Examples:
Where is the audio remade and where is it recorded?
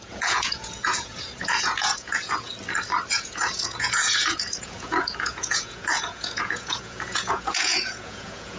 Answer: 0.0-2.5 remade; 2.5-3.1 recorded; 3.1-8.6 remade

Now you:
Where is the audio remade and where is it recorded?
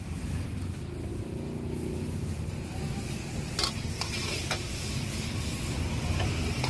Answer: 0.0-6.7 recorded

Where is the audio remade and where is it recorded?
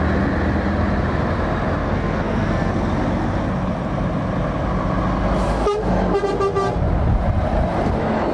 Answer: 0.0-1.8 recorded; 1.8-2.7 remade; 2.7-8.3 recorded